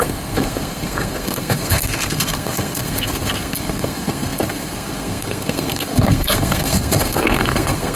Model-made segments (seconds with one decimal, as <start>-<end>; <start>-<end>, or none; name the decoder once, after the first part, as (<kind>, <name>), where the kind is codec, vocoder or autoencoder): 0.0-8.0 (codec, SNAC)